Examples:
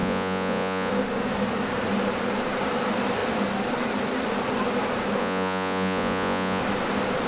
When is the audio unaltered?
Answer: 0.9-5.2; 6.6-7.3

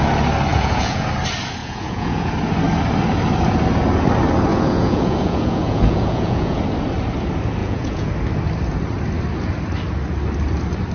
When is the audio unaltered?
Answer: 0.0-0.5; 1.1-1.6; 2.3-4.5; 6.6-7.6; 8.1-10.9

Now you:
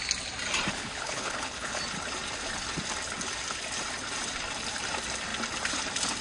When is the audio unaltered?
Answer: 0.0-0.8; 1.8-6.2

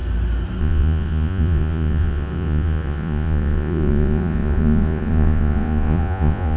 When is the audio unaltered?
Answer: 0.0-0.6

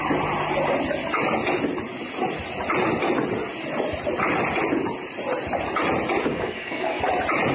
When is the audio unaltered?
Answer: 0.0-6.3; 7.0-7.5

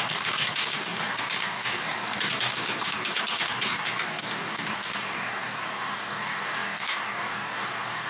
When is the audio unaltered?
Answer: none